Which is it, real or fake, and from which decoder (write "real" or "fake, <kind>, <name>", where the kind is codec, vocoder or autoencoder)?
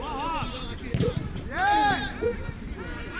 fake, vocoder, BigVGAN v2